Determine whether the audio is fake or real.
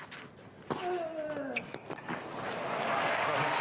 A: real